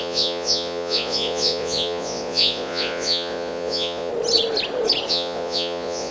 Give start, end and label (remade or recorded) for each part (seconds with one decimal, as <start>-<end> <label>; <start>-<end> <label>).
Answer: 0.0-4.1 remade; 4.1-5.1 recorded; 5.1-6.1 remade